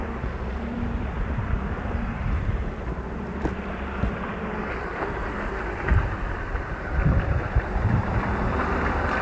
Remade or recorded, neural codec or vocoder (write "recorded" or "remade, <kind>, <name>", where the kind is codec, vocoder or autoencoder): remade, vocoder, BigVGAN v2